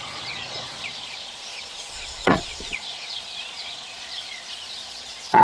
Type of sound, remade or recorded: remade